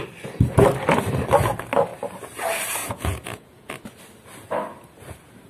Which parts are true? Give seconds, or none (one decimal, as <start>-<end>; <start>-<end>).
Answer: 0.0-2.8; 3.7-5.5